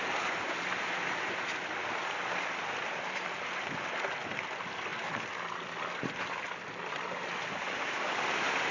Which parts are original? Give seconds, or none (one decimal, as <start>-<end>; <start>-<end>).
0.0-8.7